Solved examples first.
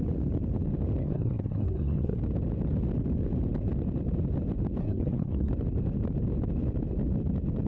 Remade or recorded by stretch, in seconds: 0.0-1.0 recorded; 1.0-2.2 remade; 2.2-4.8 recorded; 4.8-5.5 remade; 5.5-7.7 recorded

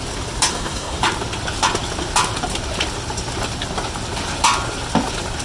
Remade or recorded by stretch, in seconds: 0.0-0.5 recorded; 0.5-1.0 remade; 1.0-5.4 recorded

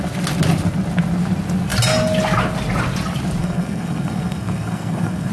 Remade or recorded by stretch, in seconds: 0.0-3.4 recorded; 3.4-5.3 remade

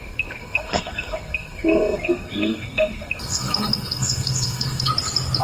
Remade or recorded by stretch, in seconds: 0.0-4.9 remade; 4.9-5.4 recorded

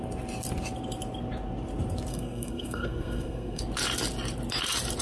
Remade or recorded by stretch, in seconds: 0.0-2.1 recorded; 2.1-3.6 remade; 3.6-5.0 recorded

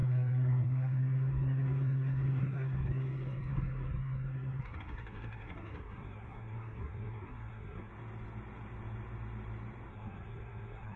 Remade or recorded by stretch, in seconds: 0.0-7.9 remade; 7.9-9.9 recorded; 9.9-11.0 remade

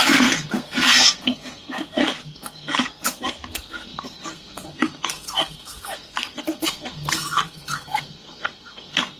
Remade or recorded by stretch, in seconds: 0.0-9.2 remade